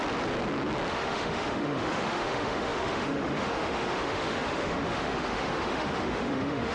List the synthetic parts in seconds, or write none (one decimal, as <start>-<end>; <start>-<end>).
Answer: 0.9-6.7